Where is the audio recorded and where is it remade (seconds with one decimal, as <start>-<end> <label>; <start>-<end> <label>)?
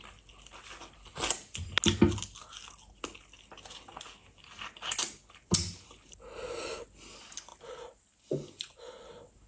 0.0-9.5 recorded